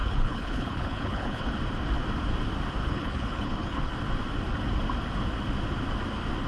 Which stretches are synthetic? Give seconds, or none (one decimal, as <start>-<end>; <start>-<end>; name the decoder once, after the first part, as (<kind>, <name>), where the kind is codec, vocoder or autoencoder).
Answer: 0.0-1.6 (codec, HILCodec); 2.8-3.9